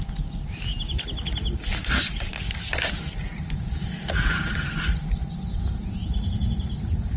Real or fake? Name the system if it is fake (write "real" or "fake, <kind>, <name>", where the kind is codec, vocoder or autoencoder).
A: real